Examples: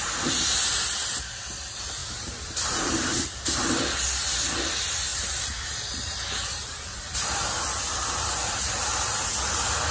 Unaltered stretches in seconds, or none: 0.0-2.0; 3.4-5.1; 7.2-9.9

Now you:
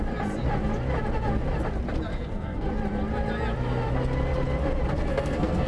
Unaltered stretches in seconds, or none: 0.0-2.1; 2.7-5.1

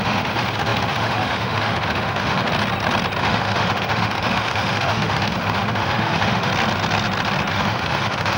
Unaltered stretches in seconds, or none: 2.5-3.2; 6.5-7.5

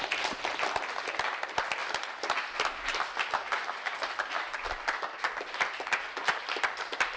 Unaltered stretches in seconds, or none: 0.0-7.2

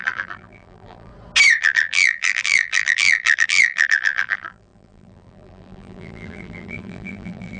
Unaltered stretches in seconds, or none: 1.1-1.6

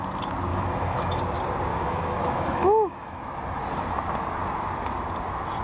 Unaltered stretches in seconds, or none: 0.0-0.5; 1.2-1.7; 3.2-5.6

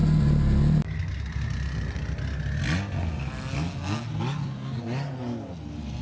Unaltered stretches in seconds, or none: 0.0-6.0

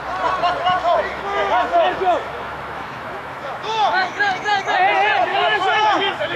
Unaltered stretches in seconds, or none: 0.0-0.8; 4.6-5.3